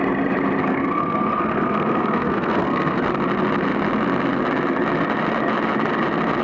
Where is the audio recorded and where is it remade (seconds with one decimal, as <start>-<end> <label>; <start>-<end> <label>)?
0.0-0.6 recorded; 0.6-3.0 remade; 3.0-6.4 recorded